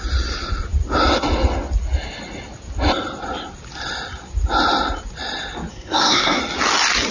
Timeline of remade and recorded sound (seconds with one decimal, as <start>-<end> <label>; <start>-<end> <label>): 0.0-5.7 recorded; 5.7-6.4 remade; 6.4-7.1 recorded